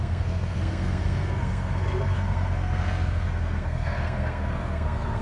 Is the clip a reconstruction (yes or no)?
yes